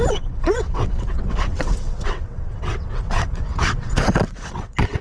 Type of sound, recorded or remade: remade